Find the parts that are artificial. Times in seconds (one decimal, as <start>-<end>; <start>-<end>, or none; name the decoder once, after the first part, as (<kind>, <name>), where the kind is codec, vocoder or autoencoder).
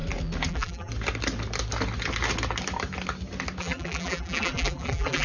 0.5-0.9 (vocoder, BigVGAN v2); 3.6-5.2